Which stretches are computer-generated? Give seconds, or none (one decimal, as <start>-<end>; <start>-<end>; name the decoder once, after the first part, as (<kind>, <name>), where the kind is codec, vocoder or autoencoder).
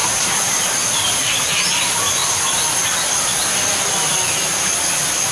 0.0-1.7 (vocoder, BigVGAN v2)